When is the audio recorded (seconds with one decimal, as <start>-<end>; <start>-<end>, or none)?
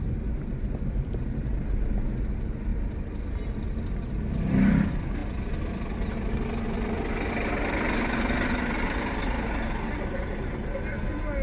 0.0-11.4